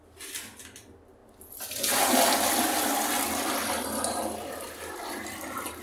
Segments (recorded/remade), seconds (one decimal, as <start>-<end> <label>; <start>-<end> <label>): 0.0-5.8 recorded